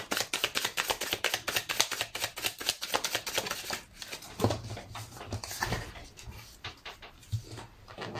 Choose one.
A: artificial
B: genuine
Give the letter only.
B